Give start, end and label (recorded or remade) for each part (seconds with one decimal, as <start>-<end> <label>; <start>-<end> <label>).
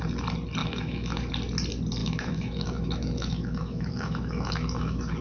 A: 0.0-0.6 recorded; 0.6-1.3 remade; 1.3-2.0 recorded; 2.0-5.2 remade